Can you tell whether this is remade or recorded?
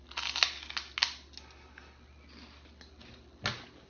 recorded